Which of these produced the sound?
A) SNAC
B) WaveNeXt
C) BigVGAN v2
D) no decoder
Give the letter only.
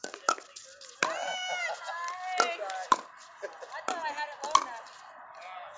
D